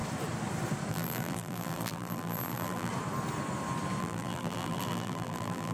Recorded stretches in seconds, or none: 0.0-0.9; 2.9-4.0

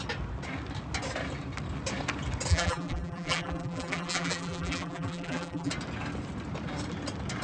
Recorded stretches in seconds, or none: 0.0-2.5; 5.7-7.4

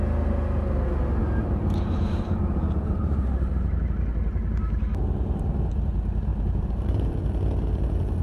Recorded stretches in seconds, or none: 0.0-1.2; 3.5-6.3; 7.1-8.2

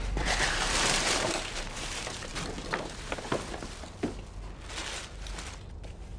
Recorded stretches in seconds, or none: 2.3-6.2

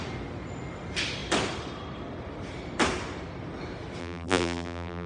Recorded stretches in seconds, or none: 0.0-4.0

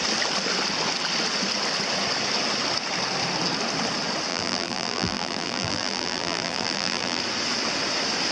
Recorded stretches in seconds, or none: 0.0-4.3; 7.2-8.3